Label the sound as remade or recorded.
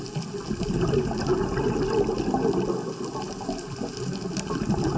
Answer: recorded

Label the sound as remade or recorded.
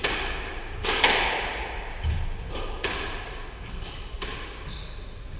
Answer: recorded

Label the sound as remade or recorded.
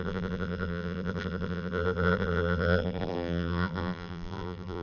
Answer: remade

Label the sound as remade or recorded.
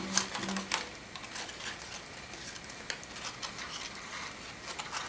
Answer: recorded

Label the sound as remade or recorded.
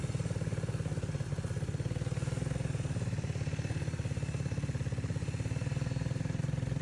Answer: recorded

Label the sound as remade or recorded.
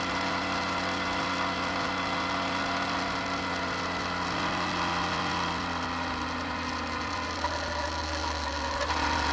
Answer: recorded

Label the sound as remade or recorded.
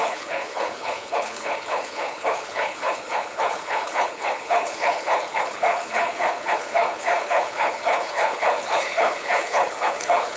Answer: remade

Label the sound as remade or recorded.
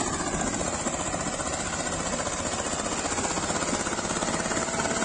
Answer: recorded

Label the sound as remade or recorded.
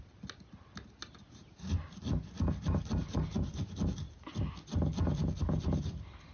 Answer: recorded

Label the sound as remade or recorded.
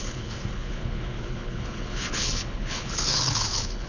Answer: remade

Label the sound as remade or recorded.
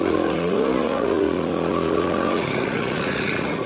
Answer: remade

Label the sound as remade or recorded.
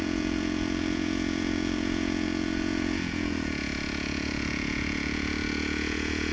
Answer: remade